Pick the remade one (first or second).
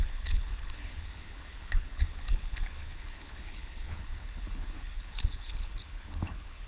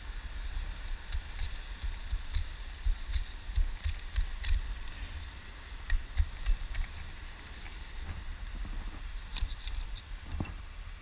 first